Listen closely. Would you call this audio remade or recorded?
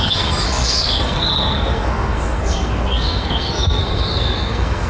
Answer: remade